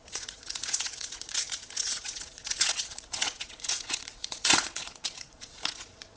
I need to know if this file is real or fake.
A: fake